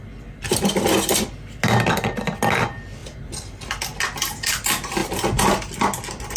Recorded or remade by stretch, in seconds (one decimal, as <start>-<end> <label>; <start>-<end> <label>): 0.0-6.4 recorded